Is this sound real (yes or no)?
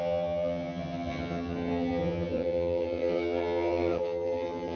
no